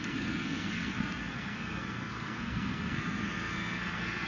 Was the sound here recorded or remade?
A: remade